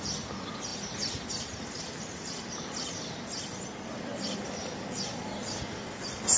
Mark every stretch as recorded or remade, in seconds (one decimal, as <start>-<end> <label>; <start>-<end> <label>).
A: 0.0-6.4 recorded